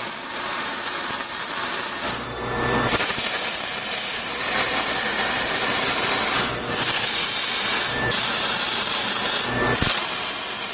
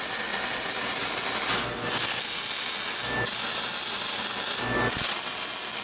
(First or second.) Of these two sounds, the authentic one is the second